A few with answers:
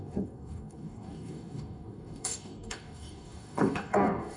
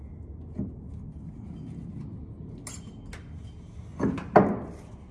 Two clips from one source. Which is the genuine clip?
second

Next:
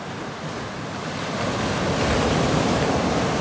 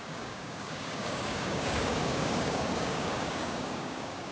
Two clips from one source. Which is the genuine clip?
first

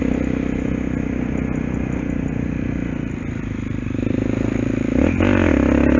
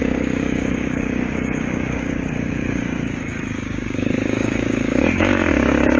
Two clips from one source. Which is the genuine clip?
first